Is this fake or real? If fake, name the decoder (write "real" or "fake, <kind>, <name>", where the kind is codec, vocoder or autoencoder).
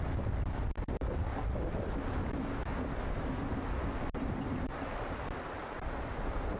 real